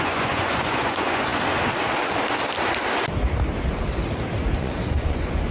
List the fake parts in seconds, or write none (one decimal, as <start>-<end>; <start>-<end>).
0.0-1.3; 4.6-5.5